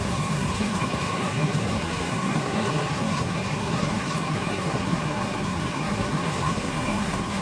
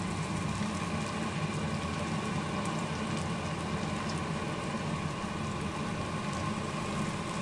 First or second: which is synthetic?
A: first